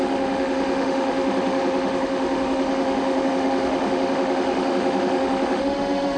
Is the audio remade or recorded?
remade